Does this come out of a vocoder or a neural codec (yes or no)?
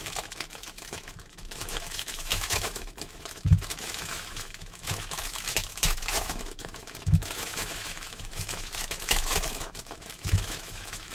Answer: yes